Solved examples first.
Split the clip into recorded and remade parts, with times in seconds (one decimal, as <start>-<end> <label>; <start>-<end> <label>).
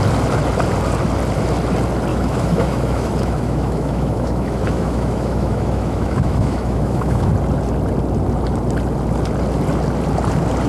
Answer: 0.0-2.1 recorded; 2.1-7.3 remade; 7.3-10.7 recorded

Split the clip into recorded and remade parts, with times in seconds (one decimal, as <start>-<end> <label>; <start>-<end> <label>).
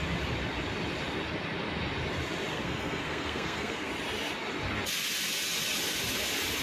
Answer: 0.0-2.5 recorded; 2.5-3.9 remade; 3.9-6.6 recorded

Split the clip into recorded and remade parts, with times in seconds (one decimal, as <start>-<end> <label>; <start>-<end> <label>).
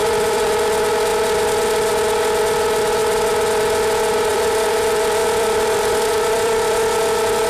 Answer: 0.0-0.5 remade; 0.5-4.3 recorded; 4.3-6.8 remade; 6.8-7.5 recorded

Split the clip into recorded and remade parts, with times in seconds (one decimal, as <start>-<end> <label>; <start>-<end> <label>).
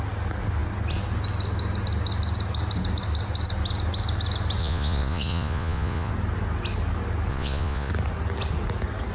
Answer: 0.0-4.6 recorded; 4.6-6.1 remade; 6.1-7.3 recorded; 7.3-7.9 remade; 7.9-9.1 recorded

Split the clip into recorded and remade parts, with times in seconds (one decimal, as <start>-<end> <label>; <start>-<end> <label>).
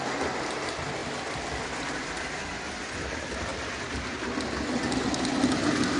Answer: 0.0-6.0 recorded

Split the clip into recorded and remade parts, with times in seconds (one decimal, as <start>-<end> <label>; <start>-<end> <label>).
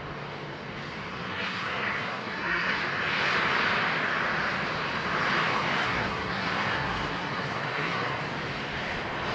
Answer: 0.0-1.1 recorded; 1.1-2.8 remade; 2.8-5.8 recorded; 5.8-8.2 remade; 8.2-9.3 recorded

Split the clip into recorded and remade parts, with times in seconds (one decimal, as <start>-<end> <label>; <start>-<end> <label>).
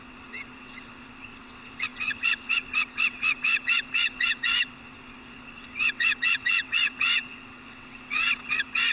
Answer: 0.0-8.9 remade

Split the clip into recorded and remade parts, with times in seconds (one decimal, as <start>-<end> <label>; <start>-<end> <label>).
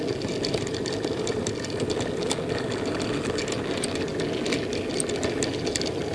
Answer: 0.0-6.1 recorded